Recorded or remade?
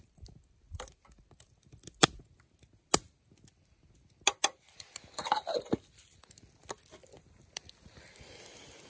recorded